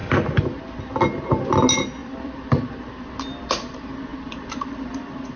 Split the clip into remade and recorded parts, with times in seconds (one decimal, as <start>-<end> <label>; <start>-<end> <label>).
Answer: 0.0-0.6 remade; 0.6-2.0 recorded; 2.0-2.7 remade; 2.7-4.1 recorded; 4.1-5.4 remade